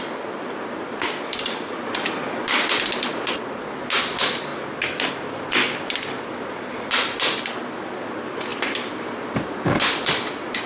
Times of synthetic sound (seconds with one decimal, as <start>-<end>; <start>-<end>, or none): 4.5-5.1; 8.5-10.1